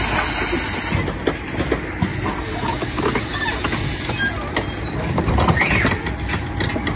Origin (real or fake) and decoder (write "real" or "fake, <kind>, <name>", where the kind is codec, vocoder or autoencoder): real